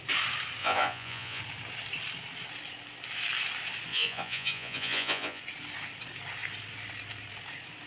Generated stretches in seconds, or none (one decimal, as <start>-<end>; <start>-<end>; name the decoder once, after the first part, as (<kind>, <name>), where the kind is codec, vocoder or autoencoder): 0.6-1.4 (vocoder, Vocos); 3.9-5.4